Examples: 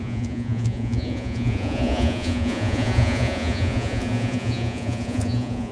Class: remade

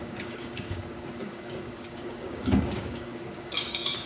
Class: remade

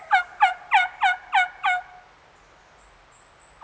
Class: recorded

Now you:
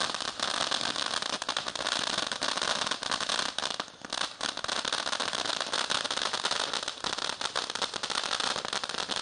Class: recorded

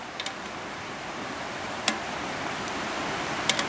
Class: remade